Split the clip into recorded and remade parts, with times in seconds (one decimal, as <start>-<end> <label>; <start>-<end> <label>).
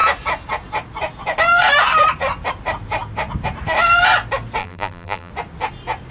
0.0-4.6 recorded; 4.6-5.3 remade; 5.3-6.1 recorded